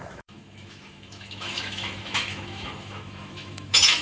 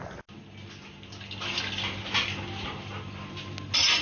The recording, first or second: second